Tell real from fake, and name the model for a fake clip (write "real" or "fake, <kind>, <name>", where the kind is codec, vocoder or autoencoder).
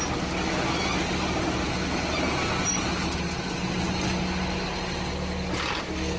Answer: real